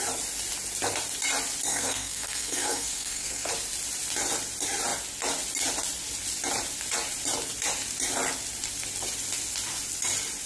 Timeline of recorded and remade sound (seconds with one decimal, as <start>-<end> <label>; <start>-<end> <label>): 0.0-1.7 recorded; 1.7-3.5 remade; 3.5-10.5 recorded